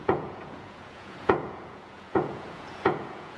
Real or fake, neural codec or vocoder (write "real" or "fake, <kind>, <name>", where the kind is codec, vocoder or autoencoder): fake, vocoder, Vocos